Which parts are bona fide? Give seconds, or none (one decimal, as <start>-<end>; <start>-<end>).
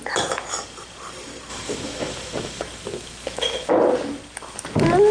0.0-1.5; 3.7-5.1